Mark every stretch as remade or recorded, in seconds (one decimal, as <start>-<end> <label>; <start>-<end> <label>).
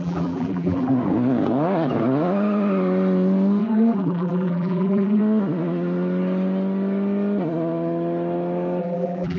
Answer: 0.0-0.9 remade; 0.9-3.6 recorded; 3.6-5.2 remade; 5.2-8.8 recorded; 8.8-9.4 remade